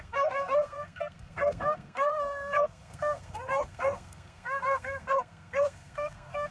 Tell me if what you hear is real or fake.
fake